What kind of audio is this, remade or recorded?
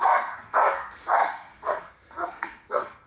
remade